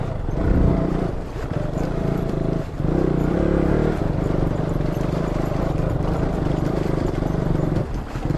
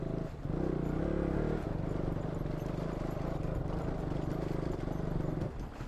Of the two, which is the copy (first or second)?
first